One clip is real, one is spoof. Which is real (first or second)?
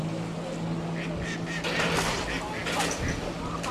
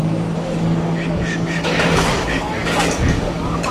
first